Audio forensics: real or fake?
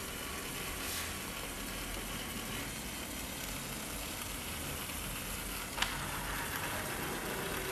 real